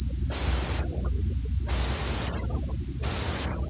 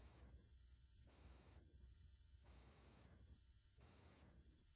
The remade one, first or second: second